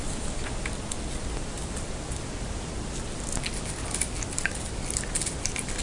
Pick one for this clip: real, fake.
real